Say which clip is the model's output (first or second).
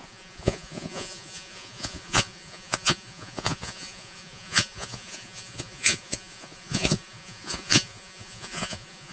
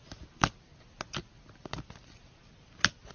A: first